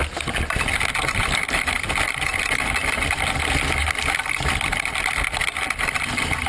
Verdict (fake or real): real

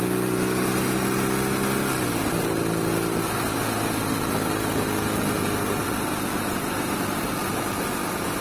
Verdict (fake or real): real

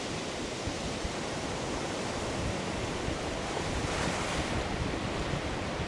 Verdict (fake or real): fake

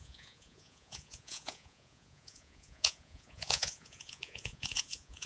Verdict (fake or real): fake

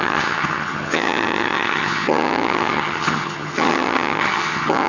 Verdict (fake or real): fake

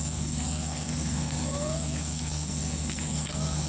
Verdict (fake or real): fake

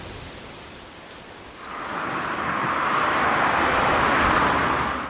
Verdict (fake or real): real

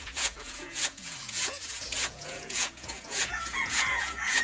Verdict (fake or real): fake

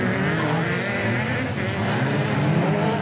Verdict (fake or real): real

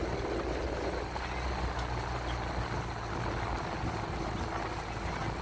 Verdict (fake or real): real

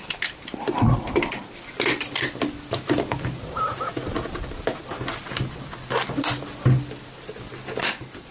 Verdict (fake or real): real